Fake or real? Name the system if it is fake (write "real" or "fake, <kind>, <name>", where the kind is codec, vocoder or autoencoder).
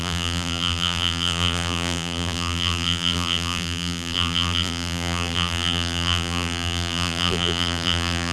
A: fake, vocoder, BigVGAN v2